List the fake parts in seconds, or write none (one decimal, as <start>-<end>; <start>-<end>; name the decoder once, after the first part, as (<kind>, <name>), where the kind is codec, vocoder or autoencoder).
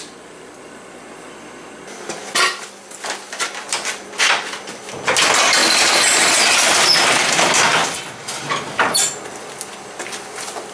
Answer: 5.6-7.3 (vocoder, BigVGAN v2)